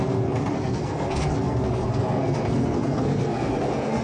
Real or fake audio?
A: fake